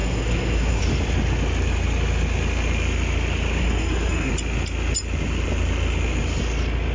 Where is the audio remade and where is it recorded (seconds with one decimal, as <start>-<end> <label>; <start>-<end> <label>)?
0.0-0.8 remade; 0.8-3.6 recorded; 3.6-4.3 remade; 4.3-6.9 recorded